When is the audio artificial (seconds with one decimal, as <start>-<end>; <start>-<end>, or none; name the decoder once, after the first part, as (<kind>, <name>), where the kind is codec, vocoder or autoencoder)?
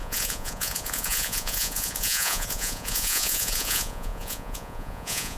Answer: 0.0-5.4 (vocoder, Vocos)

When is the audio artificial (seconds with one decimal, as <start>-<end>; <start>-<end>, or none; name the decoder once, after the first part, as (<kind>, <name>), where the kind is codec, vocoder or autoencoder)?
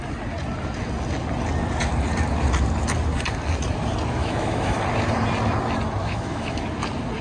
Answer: 4.2-4.8 (autoencoder, DAC-VAE); 6.0-6.6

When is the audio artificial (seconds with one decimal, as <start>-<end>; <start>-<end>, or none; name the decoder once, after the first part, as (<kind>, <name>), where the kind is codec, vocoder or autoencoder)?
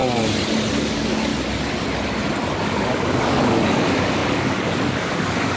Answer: 0.7-1.3 (codec, DAC); 2.6-5.6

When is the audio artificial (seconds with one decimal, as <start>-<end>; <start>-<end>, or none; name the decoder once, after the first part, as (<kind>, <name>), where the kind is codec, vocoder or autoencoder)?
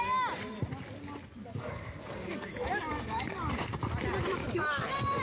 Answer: 1.4-2.5 (codec, DAC); 2.9-3.5; 4.4-5.2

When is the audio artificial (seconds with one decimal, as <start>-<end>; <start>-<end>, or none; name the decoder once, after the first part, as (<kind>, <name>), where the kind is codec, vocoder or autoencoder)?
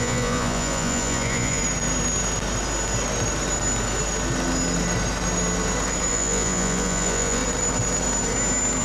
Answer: 0.0-1.6 (vocoder, Vocos); 6.1-7.4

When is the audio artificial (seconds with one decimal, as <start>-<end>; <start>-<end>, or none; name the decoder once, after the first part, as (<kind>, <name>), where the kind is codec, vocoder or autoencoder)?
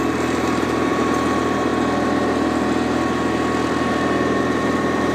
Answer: 0.0-1.7 (vocoder, BigVGAN v2); 3.7-5.1